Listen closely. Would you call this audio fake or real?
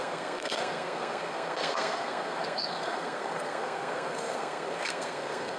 fake